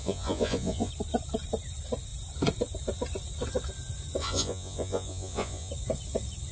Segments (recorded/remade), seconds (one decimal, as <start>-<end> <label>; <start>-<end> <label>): 0.0-0.9 remade; 0.9-4.2 recorded; 4.2-5.7 remade; 5.7-6.5 recorded